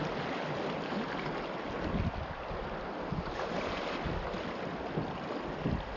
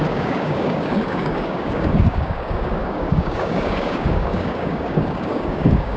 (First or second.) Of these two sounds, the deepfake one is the second